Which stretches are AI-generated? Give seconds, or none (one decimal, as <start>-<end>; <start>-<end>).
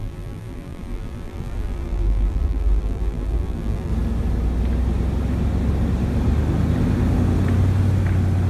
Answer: 0.0-3.9